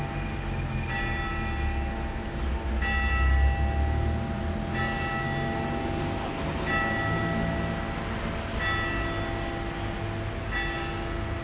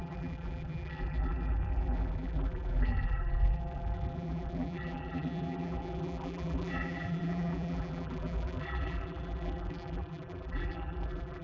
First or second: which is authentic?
first